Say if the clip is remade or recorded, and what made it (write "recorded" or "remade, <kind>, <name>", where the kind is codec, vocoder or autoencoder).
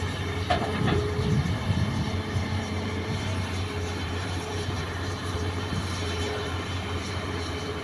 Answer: remade, vocoder, BigVGAN v2